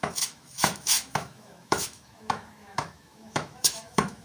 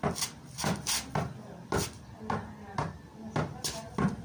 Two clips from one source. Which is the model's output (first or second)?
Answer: first